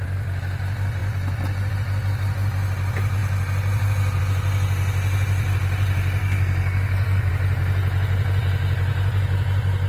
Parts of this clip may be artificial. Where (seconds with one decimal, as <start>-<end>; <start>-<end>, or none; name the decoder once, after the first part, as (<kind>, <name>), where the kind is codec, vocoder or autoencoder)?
6.2-7.3 (codec, SNAC)